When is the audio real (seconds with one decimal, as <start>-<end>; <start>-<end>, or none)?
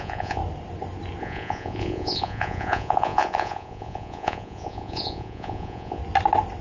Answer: 0.4-1.2; 6.0-6.6